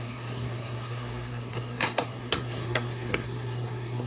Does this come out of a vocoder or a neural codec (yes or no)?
yes